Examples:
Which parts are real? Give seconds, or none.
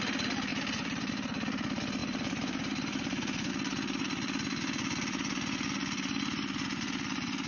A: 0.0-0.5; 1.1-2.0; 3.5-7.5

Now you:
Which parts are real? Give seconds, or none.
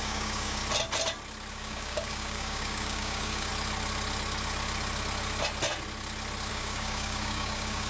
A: 0.6-1.5; 3.5-6.5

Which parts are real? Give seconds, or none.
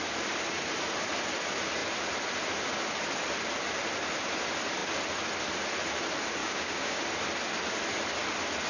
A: 0.0-6.4; 7.0-8.7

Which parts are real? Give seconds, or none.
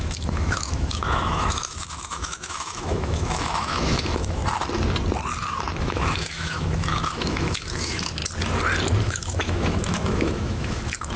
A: 4.4-5.8; 8.2-9.0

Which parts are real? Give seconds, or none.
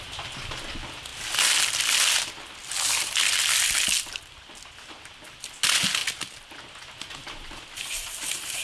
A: 0.0-8.6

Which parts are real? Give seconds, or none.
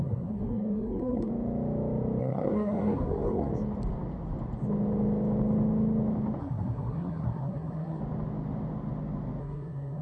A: 1.3-2.2; 3.5-6.4; 8.0-9.4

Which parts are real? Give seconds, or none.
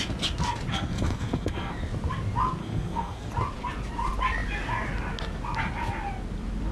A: 0.0-0.7; 1.7-2.6; 3.3-6.7